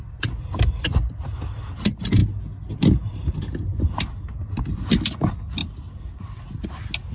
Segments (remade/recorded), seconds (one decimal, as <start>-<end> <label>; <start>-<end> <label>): 0.0-7.1 recorded